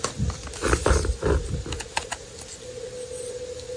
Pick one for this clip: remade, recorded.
recorded